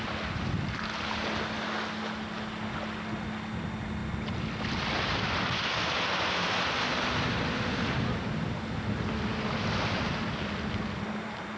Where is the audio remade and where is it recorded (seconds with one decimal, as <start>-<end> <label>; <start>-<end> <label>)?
0.0-11.6 recorded